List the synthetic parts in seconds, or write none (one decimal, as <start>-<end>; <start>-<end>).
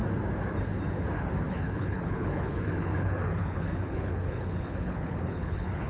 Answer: 1.5-5.9